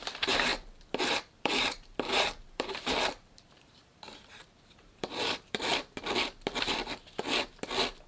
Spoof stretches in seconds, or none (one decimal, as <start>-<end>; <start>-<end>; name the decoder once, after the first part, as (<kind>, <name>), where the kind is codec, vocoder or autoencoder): 0.0-0.5 (vocoder, BigVGAN v2); 1.1-5.7